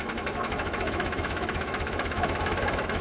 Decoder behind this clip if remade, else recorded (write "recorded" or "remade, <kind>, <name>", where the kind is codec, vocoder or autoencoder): remade, autoencoder, DAC-VAE